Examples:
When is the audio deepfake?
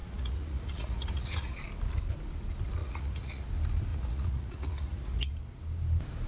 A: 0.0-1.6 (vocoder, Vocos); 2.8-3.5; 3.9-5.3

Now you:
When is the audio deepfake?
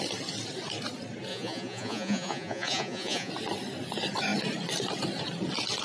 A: 1.3-3.3 (vocoder, Vocos)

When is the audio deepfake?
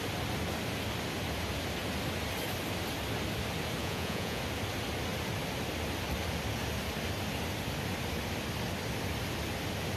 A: 3.8-4.4 (vocoder, Vocos)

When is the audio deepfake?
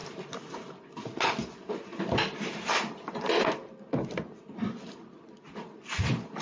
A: none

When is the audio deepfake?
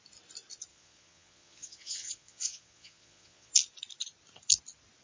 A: 0.7-3.5 (vocoder, Vocos)